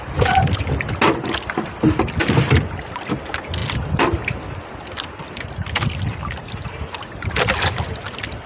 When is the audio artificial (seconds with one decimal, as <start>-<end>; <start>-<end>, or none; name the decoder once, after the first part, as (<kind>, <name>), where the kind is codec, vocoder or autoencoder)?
none